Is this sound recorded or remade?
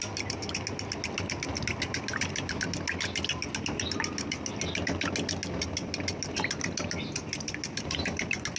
recorded